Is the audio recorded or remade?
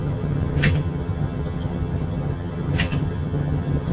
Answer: remade